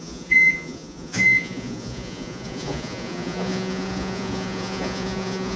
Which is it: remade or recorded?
remade